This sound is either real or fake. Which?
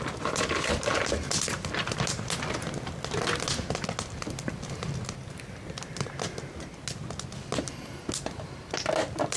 real